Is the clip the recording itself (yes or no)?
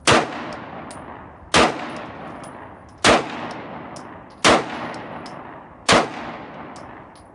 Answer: yes